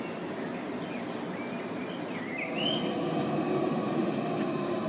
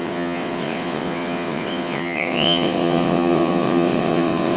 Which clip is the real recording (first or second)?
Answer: first